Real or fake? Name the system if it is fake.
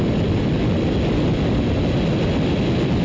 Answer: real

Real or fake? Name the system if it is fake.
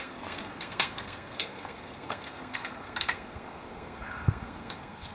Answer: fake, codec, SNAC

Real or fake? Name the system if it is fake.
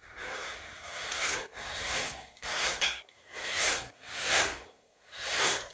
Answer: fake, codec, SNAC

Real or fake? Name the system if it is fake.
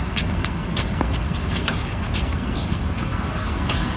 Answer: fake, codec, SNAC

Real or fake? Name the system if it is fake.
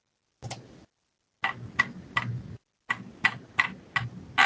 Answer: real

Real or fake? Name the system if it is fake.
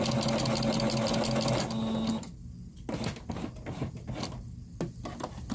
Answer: real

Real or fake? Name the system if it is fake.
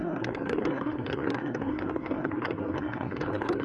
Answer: fake, codec, SNAC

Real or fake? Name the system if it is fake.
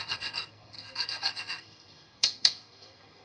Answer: fake, codec, SNAC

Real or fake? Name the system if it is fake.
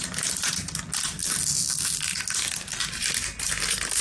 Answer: real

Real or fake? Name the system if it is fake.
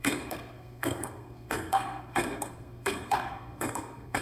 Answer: fake, codec, SNAC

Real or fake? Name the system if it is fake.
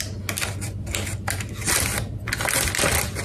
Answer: real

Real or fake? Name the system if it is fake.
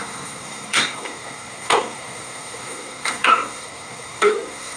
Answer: fake, codec, SNAC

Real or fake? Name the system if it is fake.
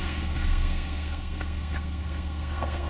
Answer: fake, codec, SNAC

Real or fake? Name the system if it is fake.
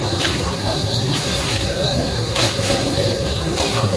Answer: fake, codec, SNAC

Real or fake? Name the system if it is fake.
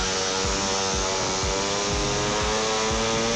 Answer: real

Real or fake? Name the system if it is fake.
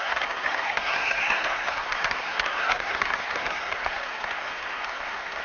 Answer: fake, codec, SNAC